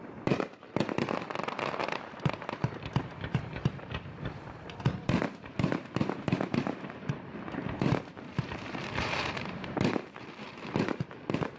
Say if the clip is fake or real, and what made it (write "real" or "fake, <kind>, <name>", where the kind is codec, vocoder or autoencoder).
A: fake, vocoder, BigVGAN v2